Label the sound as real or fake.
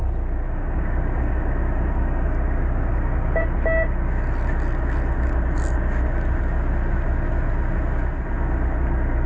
real